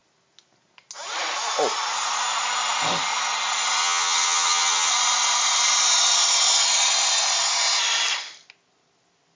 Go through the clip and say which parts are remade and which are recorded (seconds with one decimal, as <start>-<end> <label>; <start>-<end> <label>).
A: 0.0-3.8 recorded; 3.8-4.9 remade; 4.9-9.3 recorded